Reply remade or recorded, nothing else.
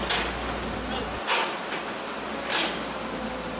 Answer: recorded